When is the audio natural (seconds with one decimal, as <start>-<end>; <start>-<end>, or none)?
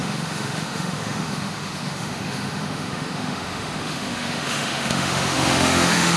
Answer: none